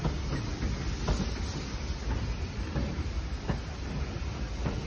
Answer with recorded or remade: recorded